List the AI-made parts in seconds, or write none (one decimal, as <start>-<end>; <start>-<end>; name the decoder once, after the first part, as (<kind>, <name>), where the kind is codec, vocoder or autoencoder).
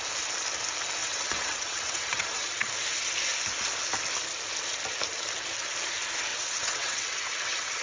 1.0-2.7 (vocoder, WaveNeXt); 6.3-7.8